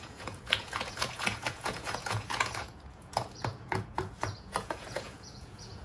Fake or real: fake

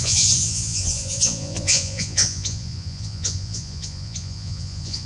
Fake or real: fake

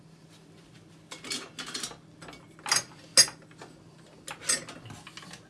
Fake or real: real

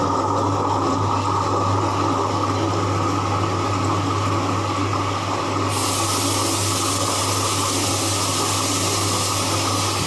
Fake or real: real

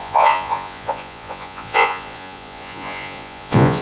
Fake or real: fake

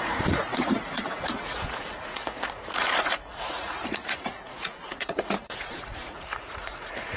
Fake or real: fake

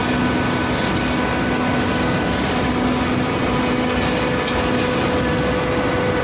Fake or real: real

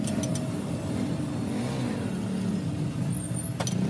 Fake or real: real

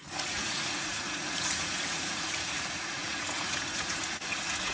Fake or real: fake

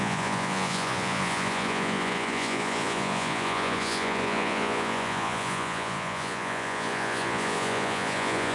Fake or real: fake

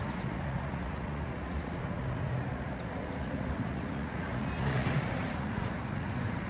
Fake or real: fake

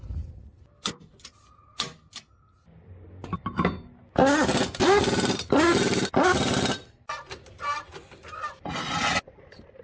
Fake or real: real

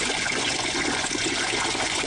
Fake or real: fake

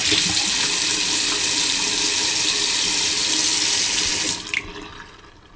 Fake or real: real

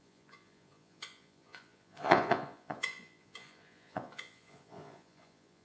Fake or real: fake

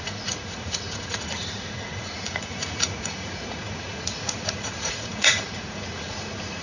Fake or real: fake